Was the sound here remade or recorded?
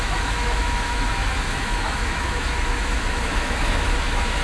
remade